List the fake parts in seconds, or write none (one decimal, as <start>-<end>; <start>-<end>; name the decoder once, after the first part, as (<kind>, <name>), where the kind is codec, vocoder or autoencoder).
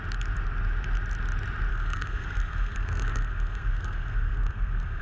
1.7-5.0 (codec, SNAC)